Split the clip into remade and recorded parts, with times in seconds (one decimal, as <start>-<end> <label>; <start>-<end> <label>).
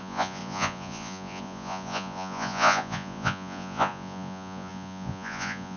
0.0-5.8 remade